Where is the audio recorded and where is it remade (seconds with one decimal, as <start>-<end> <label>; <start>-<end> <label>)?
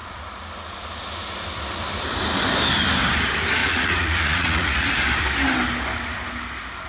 0.0-3.6 recorded; 3.6-4.9 remade; 4.9-6.9 recorded